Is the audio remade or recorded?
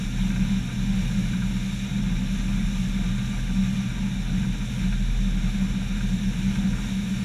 recorded